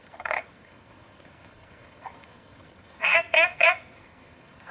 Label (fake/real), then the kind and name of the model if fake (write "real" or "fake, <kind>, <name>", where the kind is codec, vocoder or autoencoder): fake, codec, SNAC